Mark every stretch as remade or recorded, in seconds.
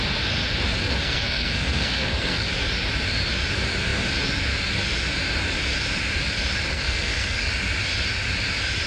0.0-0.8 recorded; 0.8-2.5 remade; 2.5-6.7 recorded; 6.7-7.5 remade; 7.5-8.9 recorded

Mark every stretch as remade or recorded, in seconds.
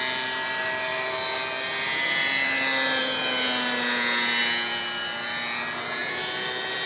0.0-6.9 recorded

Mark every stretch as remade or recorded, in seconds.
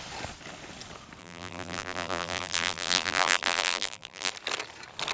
0.0-1.2 recorded; 1.2-4.3 remade; 4.3-5.1 recorded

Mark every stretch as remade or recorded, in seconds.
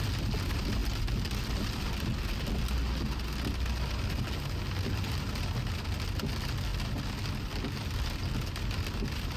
0.0-9.4 recorded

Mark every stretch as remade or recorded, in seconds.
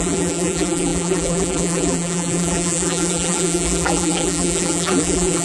0.0-5.4 remade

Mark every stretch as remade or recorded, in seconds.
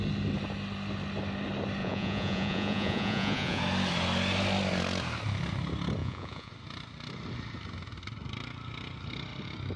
0.0-1.8 recorded; 1.8-3.6 remade; 3.6-6.0 recorded; 6.0-6.5 remade; 6.5-9.8 recorded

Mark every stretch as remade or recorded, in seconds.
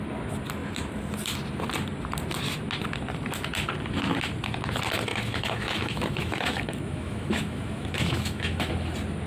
0.0-5.1 recorded; 5.1-8.7 remade; 8.7-9.3 recorded